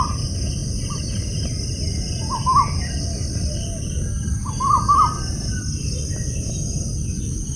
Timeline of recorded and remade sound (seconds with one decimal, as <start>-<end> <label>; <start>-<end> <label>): 0.0-7.6 recorded